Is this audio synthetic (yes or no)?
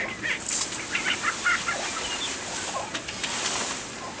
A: no